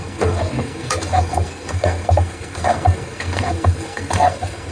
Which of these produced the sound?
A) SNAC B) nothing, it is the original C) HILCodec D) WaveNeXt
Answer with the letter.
A